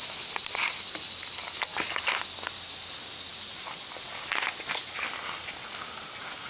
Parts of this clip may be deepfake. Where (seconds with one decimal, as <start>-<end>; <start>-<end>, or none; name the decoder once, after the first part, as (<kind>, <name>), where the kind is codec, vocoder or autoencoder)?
none